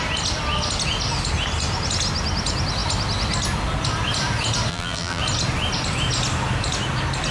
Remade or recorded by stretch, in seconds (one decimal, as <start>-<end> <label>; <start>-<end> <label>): 0.0-4.7 recorded; 4.7-5.2 remade; 5.2-7.3 recorded